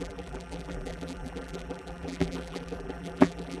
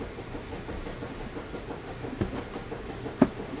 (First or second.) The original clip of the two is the second